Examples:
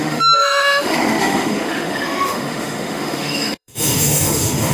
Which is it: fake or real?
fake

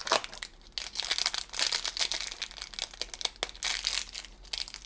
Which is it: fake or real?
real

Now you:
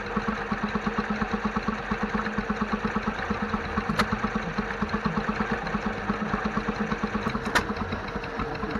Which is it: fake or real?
real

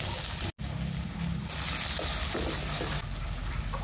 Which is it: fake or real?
real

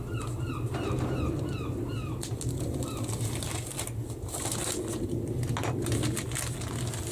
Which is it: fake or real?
real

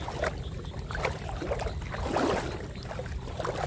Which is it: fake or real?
real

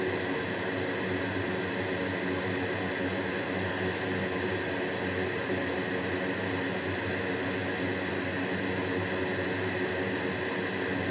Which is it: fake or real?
real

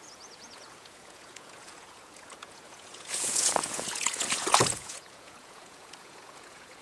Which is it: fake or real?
fake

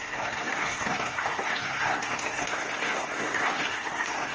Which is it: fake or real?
fake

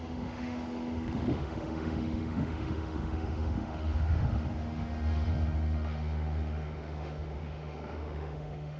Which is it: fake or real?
fake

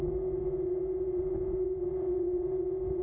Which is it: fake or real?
fake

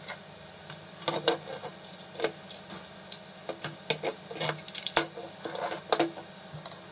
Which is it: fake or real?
real